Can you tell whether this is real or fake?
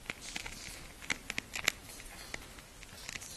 real